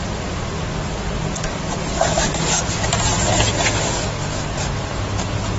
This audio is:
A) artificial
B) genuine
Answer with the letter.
B